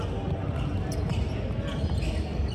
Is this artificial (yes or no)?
no